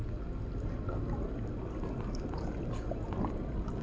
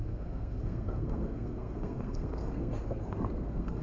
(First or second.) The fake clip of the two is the second